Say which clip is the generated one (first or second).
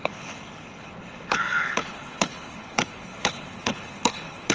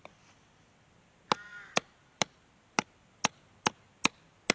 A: first